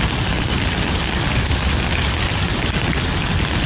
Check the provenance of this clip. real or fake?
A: real